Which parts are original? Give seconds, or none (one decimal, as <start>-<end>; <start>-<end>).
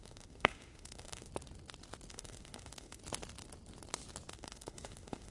1.3-2.1; 3.0-4.3